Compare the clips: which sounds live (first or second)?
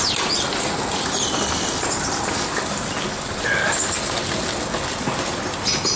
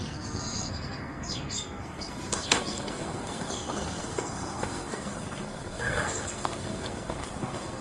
first